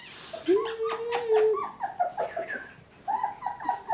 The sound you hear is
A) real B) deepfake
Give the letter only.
A